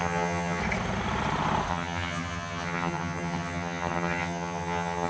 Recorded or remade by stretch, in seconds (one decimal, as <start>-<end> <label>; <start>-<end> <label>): 0.0-0.6 remade; 0.6-1.7 recorded; 1.7-5.1 remade